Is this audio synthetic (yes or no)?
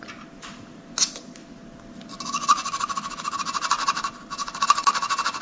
no